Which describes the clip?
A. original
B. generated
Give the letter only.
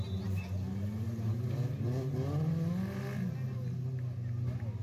A